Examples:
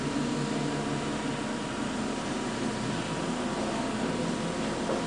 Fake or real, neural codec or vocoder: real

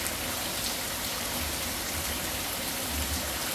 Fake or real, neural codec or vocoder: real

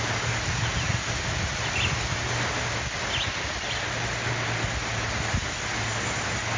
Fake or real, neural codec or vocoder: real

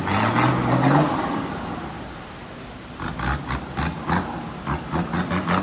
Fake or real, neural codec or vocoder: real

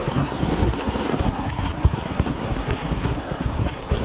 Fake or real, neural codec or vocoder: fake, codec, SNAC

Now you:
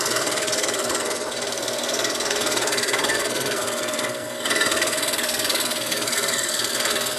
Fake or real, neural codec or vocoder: fake, codec, SNAC